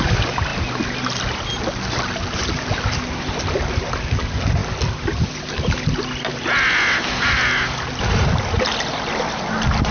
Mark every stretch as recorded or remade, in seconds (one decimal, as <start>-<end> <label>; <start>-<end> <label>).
0.0-9.9 recorded